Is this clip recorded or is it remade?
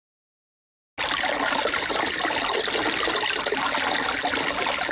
recorded